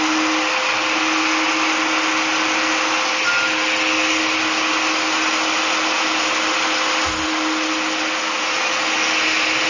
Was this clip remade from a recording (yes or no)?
no